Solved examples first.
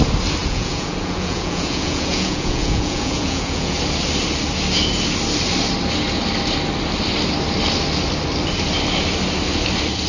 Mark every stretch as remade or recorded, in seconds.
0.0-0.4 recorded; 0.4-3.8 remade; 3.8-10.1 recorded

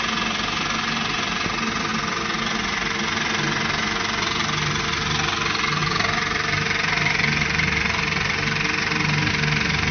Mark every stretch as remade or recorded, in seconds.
0.0-9.9 recorded

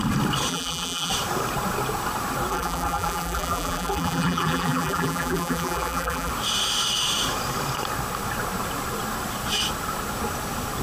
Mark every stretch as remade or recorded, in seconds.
0.0-0.5 recorded; 0.5-1.1 remade; 1.1-2.5 recorded; 2.5-6.3 remade; 6.3-10.8 recorded

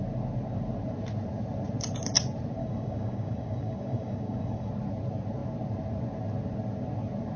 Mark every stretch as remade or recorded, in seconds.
0.0-2.6 recorded; 2.6-4.7 remade; 4.7-7.4 recorded